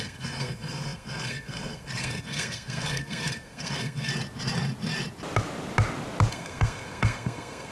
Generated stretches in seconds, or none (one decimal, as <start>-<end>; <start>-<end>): 0.0-4.1; 6.3-7.7